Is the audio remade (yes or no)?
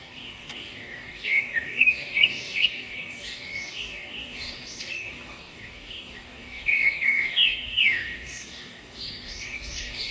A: yes